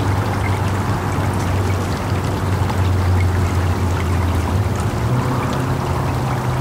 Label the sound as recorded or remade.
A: recorded